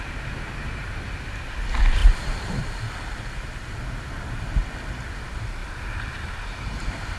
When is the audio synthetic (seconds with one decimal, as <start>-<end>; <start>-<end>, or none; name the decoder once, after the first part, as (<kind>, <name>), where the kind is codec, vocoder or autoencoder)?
2.0-2.6 (vocoder, BigVGAN v2); 5.6-6.3